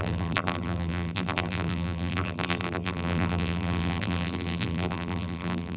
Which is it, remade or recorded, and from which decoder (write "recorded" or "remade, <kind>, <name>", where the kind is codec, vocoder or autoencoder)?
remade, vocoder, BigVGAN v2